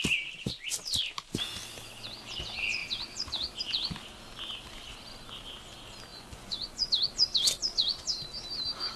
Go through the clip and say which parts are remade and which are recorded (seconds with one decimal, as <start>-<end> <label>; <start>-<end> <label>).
0.0-6.1 recorded; 6.1-6.9 remade; 6.9-9.0 recorded